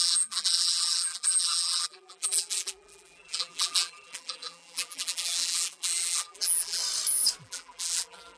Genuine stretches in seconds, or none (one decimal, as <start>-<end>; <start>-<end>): 6.8-7.4